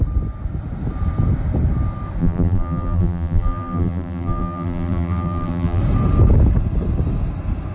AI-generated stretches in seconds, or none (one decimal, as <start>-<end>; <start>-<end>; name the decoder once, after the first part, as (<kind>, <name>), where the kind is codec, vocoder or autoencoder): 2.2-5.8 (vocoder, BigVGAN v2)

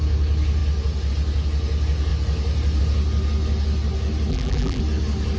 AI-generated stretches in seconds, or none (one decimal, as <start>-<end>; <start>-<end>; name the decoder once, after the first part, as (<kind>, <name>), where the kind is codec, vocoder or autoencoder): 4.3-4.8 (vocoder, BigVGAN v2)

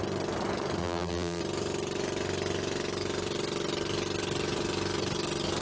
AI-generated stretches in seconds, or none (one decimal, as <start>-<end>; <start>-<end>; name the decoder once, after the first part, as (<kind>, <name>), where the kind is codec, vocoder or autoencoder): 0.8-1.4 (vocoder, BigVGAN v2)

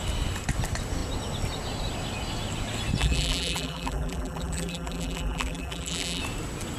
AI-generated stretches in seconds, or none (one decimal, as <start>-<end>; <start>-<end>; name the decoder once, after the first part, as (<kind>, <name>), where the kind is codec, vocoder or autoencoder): 3.0-6.2 (vocoder, BigVGAN v2)

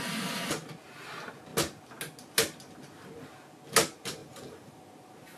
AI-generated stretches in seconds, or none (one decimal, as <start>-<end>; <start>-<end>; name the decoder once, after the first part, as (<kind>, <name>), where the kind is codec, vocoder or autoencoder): 4.2-4.8 (vocoder, BigVGAN v2)

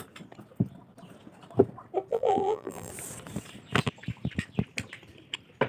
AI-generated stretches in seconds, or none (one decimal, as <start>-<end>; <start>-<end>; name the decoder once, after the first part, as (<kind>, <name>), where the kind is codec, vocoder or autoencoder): 2.1-2.9 (vocoder, BigVGAN v2)

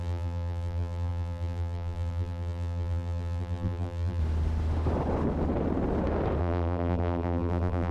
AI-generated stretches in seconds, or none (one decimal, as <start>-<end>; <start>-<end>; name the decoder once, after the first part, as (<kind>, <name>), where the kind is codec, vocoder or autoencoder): 0.0-4.2 (vocoder, BigVGAN v2); 6.4-7.9